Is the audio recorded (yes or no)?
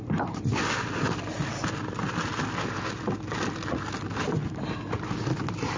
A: yes